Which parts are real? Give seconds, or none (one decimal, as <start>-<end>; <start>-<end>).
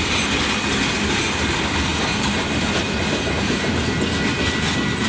0.0-1.9; 3.9-5.1